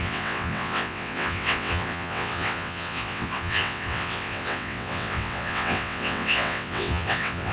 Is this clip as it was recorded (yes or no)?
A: no